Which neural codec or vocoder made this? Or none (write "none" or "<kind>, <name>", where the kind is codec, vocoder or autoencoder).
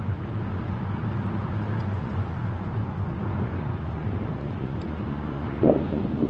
vocoder, Vocos